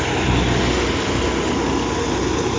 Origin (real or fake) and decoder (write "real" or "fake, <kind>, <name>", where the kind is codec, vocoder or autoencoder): real